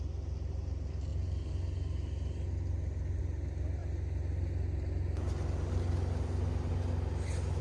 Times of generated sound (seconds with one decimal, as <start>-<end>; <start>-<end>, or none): none